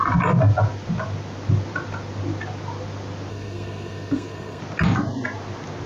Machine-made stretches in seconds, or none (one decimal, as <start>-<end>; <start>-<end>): 3.3-4.6